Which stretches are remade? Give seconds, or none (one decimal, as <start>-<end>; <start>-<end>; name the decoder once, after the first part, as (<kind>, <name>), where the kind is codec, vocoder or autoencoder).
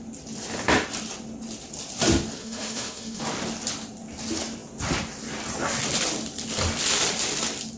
2.4-3.2 (autoencoder, DAC-VAE)